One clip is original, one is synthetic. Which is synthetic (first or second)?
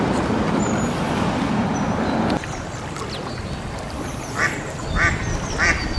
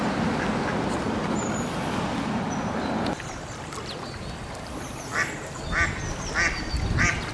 first